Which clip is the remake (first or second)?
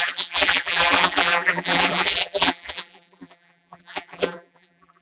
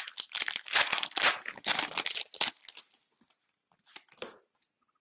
first